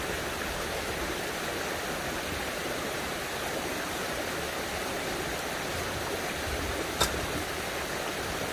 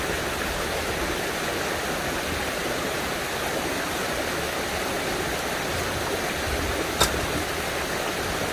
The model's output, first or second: first